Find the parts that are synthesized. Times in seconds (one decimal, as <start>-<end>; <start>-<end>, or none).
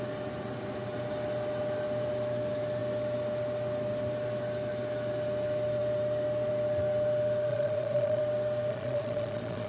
7.5-8.2; 8.7-9.7